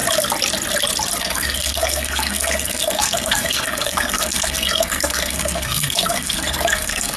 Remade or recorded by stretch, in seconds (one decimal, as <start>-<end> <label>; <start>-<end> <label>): 0.0-1.2 recorded; 1.2-7.2 remade